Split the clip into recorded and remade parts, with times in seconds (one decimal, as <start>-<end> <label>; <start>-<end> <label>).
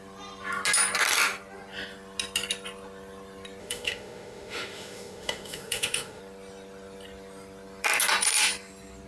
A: 0.0-3.6 recorded; 3.6-6.2 remade; 6.2-9.1 recorded